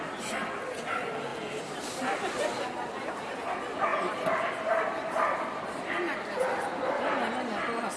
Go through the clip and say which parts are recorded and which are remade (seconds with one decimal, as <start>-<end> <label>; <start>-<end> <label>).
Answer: 0.0-1.3 recorded; 1.3-1.8 remade; 1.8-3.9 recorded; 3.9-6.2 remade; 6.2-8.0 recorded